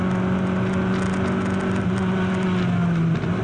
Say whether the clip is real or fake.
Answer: real